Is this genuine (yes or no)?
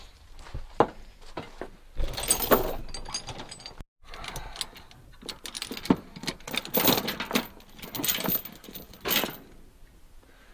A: yes